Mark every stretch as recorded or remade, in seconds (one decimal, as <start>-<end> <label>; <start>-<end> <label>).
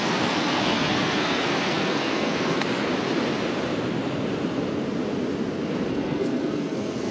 0.0-2.9 remade; 2.9-5.9 recorded; 5.9-7.1 remade